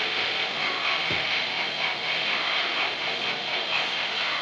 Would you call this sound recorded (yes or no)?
no